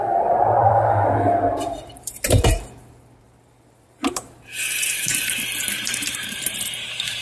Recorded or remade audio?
remade